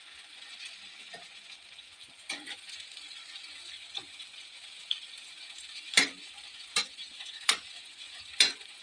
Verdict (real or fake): fake